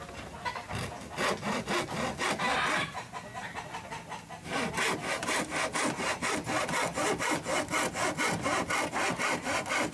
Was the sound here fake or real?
real